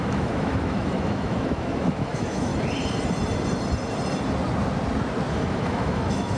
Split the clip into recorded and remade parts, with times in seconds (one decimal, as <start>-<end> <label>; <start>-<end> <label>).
0.0-2.5 remade; 2.5-5.3 recorded; 5.3-6.4 remade